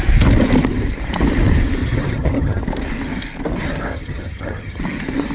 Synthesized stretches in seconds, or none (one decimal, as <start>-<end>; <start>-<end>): 1.8-2.6; 3.9-4.8